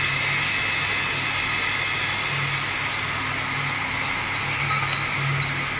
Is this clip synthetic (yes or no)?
no